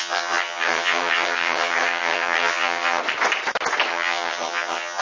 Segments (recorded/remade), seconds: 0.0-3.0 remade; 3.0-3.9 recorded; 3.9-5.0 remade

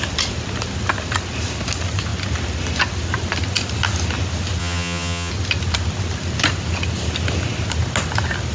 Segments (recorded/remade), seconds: 0.0-4.6 recorded; 4.6-5.3 remade; 5.3-8.5 recorded

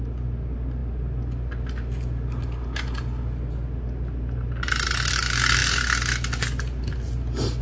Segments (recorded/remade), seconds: 0.0-7.6 recorded

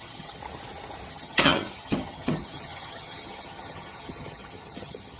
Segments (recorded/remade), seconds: 0.0-0.4 remade; 0.4-1.1 recorded; 1.1-5.2 remade

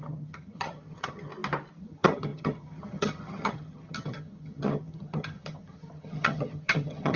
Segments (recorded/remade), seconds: 0.0-1.3 remade; 1.3-1.8 recorded; 1.8-7.2 remade

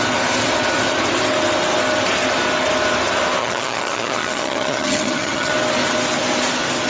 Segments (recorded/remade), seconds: 0.0-3.4 recorded; 3.4-5.5 remade; 5.5-6.9 recorded

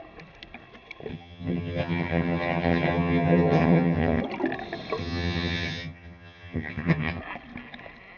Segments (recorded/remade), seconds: 0.0-1.1 recorded; 1.1-4.2 remade; 4.2-5.0 recorded; 5.0-7.2 remade; 7.2-8.2 recorded

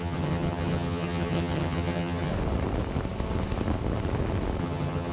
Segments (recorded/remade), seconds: 0.0-2.3 remade; 2.3-4.6 recorded; 4.6-5.1 remade